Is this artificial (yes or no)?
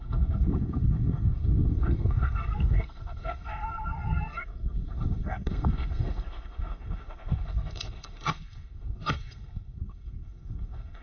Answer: yes